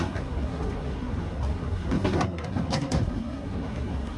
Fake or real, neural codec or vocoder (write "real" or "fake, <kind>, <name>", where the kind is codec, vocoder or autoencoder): fake, codec, SNAC